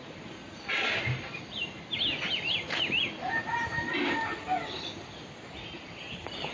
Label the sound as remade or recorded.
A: recorded